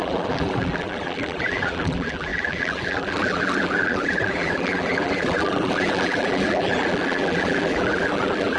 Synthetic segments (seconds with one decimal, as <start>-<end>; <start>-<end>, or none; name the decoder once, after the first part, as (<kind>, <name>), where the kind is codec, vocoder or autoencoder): 0.0-8.6 (vocoder, BigVGAN v2)